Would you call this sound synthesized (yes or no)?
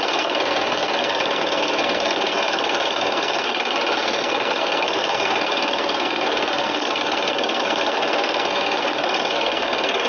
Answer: yes